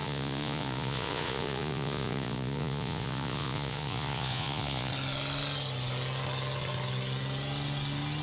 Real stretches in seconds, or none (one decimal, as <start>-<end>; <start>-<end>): 4.9-8.2